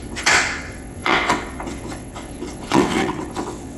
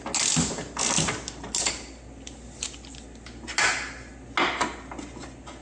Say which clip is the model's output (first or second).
first